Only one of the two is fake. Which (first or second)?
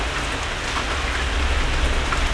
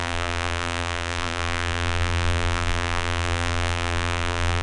second